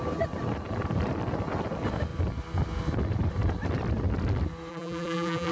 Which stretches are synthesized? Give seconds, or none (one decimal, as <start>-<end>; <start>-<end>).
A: 4.7-5.5